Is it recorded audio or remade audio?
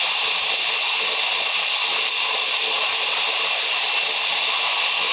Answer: recorded